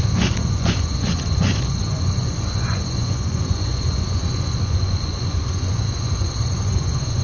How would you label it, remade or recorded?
remade